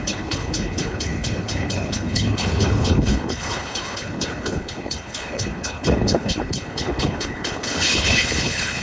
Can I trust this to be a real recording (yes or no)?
no